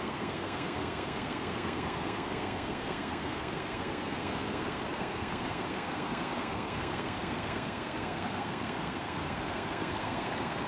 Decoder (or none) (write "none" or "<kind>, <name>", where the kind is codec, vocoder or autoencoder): codec, SNAC